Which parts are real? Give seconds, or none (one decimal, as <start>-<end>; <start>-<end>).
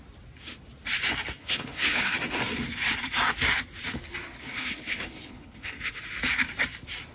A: 0.0-1.4; 2.1-4.4; 6.0-7.1